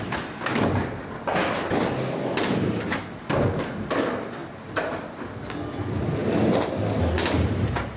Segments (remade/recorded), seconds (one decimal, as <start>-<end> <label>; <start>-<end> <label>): 0.0-8.0 recorded